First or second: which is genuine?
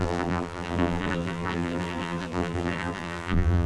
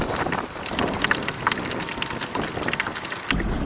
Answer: second